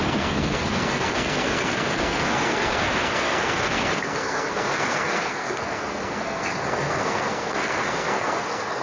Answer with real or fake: fake